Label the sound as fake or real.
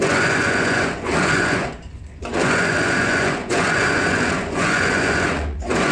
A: fake